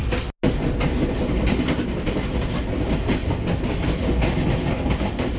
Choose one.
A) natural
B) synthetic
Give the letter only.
A